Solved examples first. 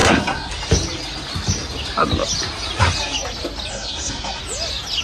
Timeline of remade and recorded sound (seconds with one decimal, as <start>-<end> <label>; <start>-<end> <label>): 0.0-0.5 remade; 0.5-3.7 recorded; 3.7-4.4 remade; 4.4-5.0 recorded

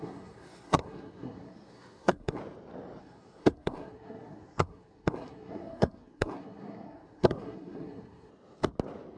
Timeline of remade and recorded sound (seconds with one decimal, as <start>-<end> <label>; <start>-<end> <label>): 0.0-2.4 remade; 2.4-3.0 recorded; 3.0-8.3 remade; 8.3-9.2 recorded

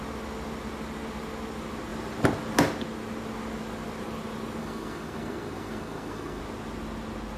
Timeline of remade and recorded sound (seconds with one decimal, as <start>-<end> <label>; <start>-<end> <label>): 0.0-4.6 recorded; 4.6-6.4 remade; 6.4-7.4 recorded

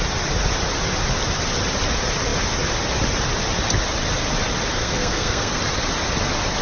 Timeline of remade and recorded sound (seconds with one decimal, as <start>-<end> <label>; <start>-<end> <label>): 0.0-4.8 recorded; 4.8-5.6 remade; 5.6-6.6 recorded

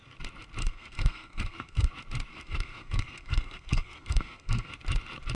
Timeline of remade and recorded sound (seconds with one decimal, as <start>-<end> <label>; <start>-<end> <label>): 0.0-0.6 recorded; 0.6-1.9 remade; 1.9-2.3 recorded; 2.3-4.7 remade; 4.7-5.4 recorded